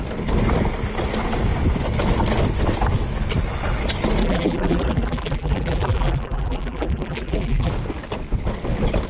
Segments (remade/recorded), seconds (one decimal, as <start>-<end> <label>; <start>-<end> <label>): 0.0-4.2 recorded; 4.2-7.7 remade; 7.7-9.1 recorded